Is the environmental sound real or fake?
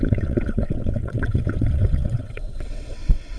fake